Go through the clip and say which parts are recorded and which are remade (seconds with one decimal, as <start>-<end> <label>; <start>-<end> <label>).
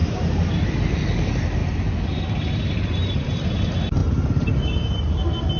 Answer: 0.0-0.6 remade; 0.6-3.0 recorded; 3.0-3.5 remade; 3.5-5.6 recorded